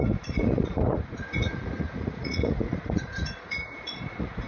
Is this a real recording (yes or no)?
no